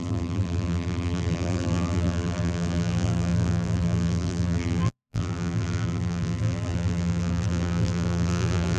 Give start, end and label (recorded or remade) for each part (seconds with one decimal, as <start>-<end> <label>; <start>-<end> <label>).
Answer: 0.0-8.8 remade